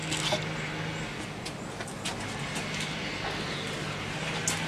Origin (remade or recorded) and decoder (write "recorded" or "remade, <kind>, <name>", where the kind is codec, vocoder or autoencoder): recorded